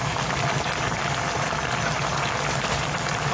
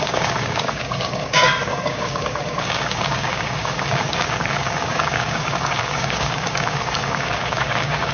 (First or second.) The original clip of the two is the first